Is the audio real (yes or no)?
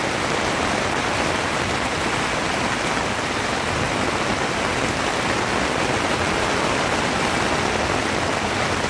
yes